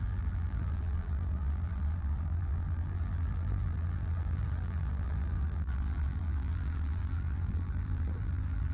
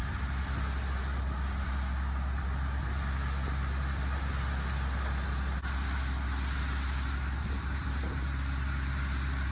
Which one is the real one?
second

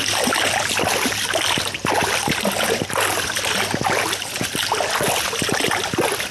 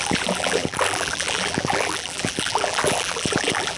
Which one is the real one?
first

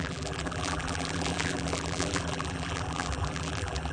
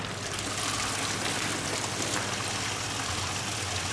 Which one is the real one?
second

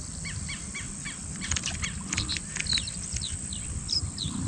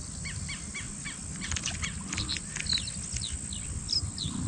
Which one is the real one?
second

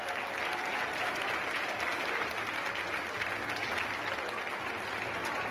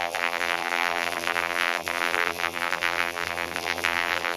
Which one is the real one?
first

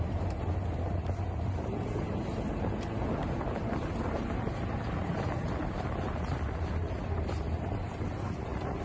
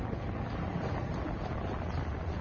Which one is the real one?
second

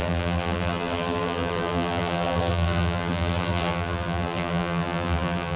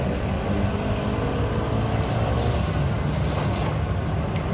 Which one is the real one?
second